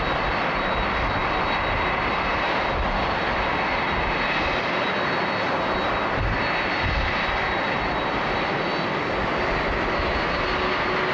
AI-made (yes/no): no